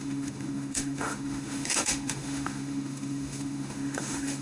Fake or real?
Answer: fake